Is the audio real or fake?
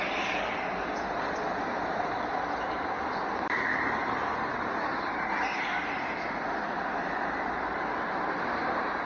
real